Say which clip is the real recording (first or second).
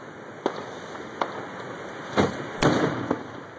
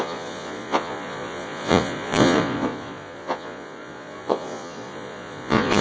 first